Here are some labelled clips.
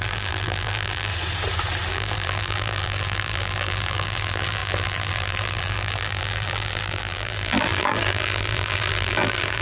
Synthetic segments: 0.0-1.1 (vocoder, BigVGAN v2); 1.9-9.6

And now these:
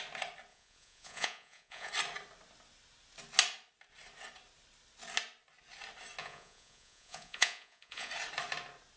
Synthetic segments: 0.5-1.9 (vocoder, Vocos); 6.2-8.1

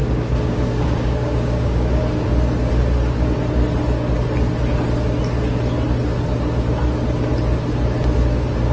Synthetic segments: 0.0-2.0 (codec, DAC)

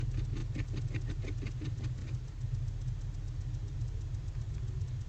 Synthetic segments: none

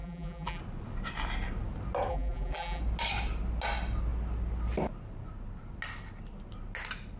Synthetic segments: 0.0-0.6 (vocoder, BigVGAN v2); 2.1-2.8